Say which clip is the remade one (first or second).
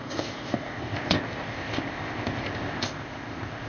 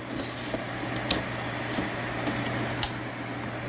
first